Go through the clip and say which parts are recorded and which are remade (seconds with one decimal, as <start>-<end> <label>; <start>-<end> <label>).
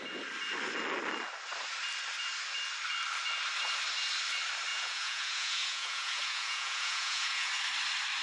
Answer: 0.0-4.7 recorded; 4.7-7.5 remade; 7.5-8.2 recorded